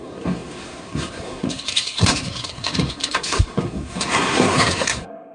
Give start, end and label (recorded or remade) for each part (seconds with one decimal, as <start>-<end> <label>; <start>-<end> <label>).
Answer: 0.0-5.3 remade